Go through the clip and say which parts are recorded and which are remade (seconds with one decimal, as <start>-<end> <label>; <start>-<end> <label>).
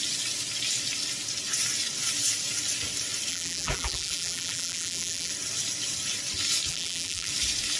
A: 0.0-3.3 recorded; 3.3-5.3 remade; 5.3-6.7 recorded; 6.7-7.3 remade; 7.3-7.8 recorded